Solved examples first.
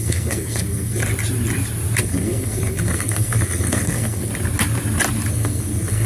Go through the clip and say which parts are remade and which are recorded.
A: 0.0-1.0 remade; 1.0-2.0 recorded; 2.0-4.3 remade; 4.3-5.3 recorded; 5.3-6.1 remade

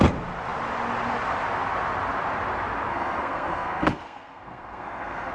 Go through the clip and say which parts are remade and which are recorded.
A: 0.0-2.9 recorded; 2.9-5.3 remade

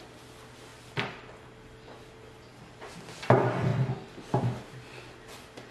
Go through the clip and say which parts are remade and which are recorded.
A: 0.0-5.7 recorded

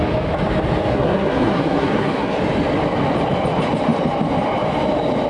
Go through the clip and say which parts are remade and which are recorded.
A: 0.0-0.9 recorded; 0.9-2.4 remade; 2.4-5.3 recorded